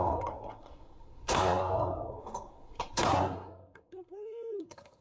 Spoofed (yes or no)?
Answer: yes